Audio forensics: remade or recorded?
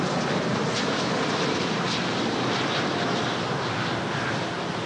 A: recorded